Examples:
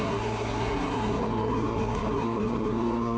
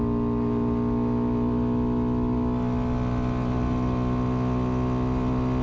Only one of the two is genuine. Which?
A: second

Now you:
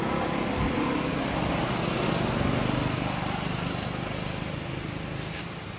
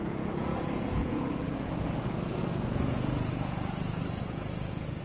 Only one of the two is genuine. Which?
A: first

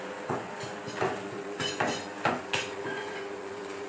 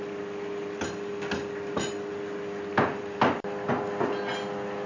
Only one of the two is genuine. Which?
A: second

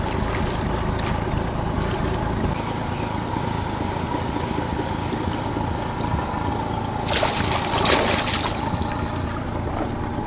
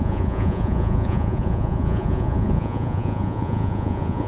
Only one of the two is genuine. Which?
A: first